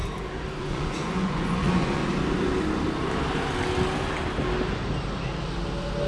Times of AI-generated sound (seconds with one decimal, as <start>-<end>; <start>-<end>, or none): 0.6-2.0

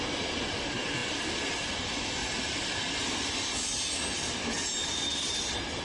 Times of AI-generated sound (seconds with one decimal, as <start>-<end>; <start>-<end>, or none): none

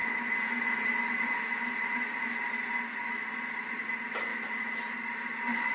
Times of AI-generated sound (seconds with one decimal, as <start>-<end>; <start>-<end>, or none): none

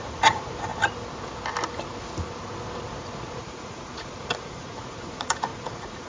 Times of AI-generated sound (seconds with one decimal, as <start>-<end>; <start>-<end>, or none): 0.0-0.7; 2.9-6.1

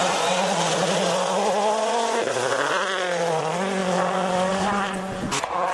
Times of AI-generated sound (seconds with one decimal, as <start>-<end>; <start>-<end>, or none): 0.0-3.8; 4.5-5.7